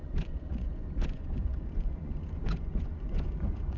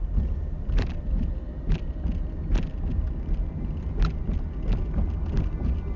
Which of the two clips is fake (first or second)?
first